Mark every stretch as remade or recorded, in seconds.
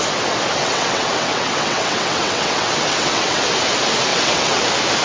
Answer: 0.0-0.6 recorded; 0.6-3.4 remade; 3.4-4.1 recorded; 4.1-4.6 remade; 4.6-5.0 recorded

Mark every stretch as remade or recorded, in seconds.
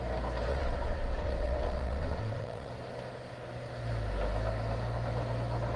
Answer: 0.0-0.5 recorded; 0.5-2.7 remade; 2.7-5.8 recorded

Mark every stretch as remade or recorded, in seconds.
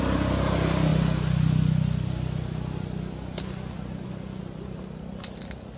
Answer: 0.0-5.8 recorded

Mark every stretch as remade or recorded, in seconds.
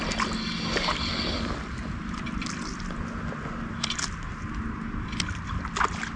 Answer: 0.0-6.2 recorded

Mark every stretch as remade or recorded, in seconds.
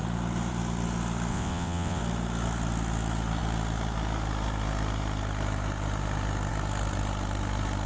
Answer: 0.0-1.3 recorded; 1.3-2.0 remade; 2.0-7.9 recorded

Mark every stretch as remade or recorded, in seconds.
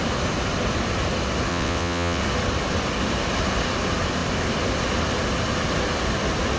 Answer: 0.0-1.5 recorded; 1.5-2.2 remade; 2.2-6.6 recorded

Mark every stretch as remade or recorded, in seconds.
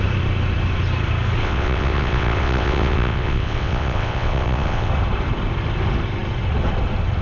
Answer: 0.0-1.4 recorded; 1.4-4.9 remade; 4.9-7.2 recorded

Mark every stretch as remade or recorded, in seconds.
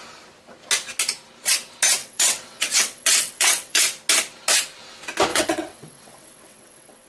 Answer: 0.0-2.0 recorded; 2.0-3.8 remade; 3.8-5.3 recorded; 5.3-7.1 remade